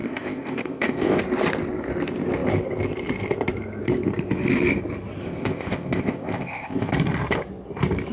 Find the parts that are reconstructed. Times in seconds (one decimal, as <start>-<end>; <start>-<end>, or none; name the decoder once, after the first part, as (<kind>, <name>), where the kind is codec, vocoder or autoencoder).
0.0-1.2 (codec, ZipCodec); 5.2-6.9